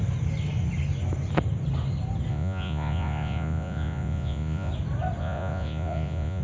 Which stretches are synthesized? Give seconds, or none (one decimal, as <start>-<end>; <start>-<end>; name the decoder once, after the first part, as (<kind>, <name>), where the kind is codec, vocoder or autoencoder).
2.3-4.7 (vocoder, Vocos); 5.2-6.4